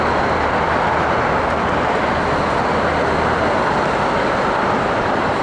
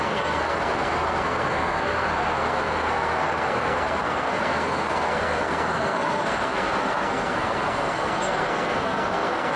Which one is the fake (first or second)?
second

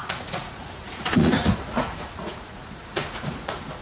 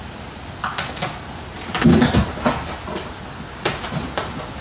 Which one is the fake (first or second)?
first